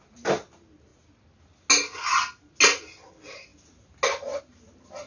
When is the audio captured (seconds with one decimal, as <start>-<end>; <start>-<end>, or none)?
0.0-5.1